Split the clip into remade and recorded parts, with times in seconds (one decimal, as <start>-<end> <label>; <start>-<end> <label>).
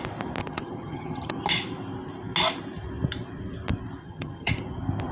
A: 0.0-0.4 recorded; 0.4-1.3 remade; 1.3-4.0 recorded; 4.0-4.5 remade; 4.5-5.1 recorded